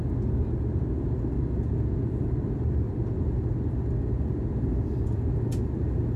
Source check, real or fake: real